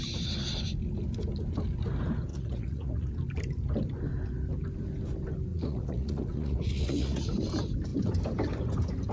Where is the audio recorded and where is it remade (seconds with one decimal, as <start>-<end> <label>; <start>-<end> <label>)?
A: 0.0-2.3 recorded; 2.3-3.1 remade; 3.1-5.5 recorded; 5.5-7.2 remade; 7.2-9.1 recorded